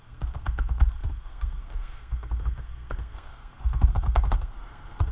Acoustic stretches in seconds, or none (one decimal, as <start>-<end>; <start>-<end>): none